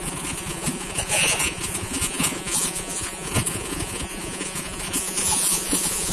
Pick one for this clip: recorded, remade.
remade